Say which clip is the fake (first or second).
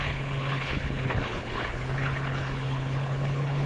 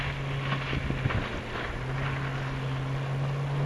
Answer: first